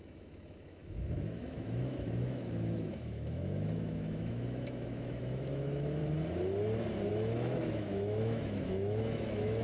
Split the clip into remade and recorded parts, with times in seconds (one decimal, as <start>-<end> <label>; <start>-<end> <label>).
0.0-6.0 remade; 6.0-7.1 recorded; 7.1-9.6 remade